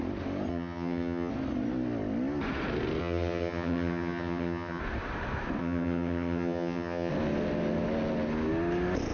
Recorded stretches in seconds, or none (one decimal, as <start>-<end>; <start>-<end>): 0.0-0.5; 1.3-3.0; 4.8-5.6; 7.1-9.1